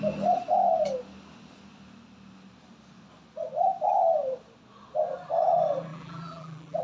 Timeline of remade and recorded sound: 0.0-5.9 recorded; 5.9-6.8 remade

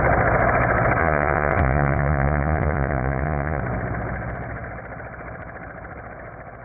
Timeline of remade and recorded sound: 0.0-1.0 recorded; 1.0-3.6 remade; 3.6-6.6 recorded

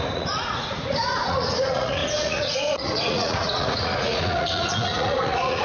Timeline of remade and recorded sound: 0.0-5.6 remade

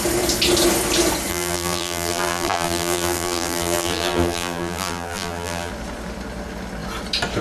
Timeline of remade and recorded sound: 0.0-1.3 recorded; 1.3-5.7 remade; 5.7-7.4 recorded

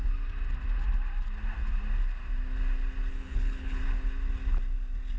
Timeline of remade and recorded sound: 0.0-3.1 recorded; 3.1-3.8 remade; 3.8-5.2 recorded